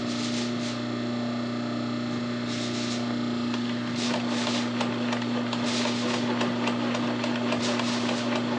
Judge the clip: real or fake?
real